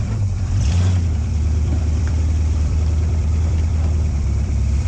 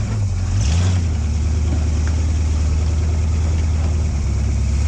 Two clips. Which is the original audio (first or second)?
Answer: second